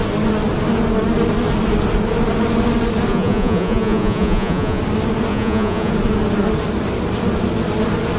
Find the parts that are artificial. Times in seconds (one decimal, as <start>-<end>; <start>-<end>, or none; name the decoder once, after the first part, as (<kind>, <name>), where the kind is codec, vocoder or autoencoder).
3.1-4.8 (vocoder, Vocos); 5.3-5.9